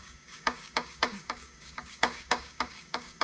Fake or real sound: fake